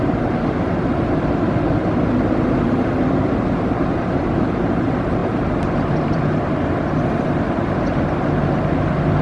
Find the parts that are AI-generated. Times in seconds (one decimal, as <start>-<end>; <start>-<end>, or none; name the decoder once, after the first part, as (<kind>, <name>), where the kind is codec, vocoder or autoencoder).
0.0-9.2 (vocoder, BigVGAN v2)